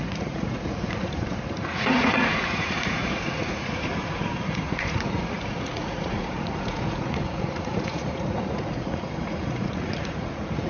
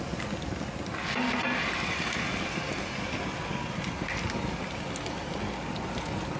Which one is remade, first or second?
first